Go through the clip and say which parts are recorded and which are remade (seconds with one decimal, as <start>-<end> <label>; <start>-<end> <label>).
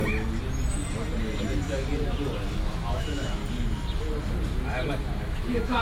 0.0-2.5 recorded; 2.5-3.4 remade; 3.4-5.0 recorded; 5.0-5.8 remade